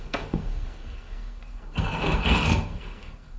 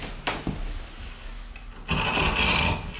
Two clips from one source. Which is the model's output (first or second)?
first